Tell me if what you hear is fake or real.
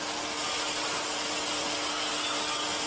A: real